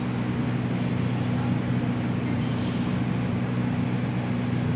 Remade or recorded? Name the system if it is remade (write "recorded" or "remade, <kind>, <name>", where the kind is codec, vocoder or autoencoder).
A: recorded